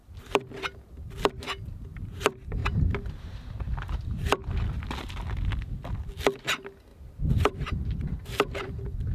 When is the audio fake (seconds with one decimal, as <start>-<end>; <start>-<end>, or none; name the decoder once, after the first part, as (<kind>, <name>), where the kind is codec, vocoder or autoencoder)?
2.0-4.4 (vocoder, BigVGAN v2); 6.5-6.9; 7.4-9.1